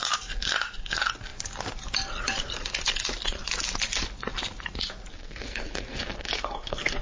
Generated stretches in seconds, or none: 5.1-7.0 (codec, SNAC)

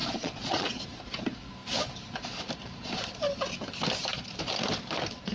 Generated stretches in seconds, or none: 0.0-0.8 (vocoder, Vocos)

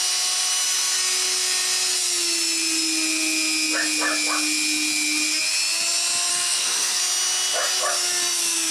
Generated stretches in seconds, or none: 6.3-7.0 (codec, SNAC)

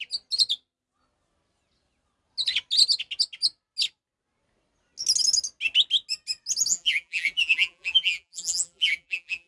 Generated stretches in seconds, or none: 6.7-9.5 (vocoder, BigVGAN v2)

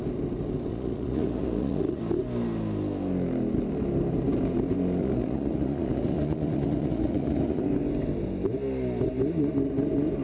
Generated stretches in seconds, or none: 0.7-2.0 (vocoder, Vocos); 5.0-7.6

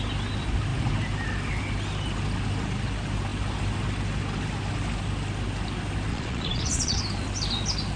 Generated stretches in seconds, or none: 6.1-7.0 (vocoder, Vocos)

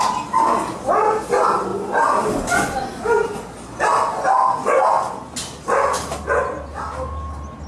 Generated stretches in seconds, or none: none